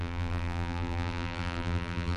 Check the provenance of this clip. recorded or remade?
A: remade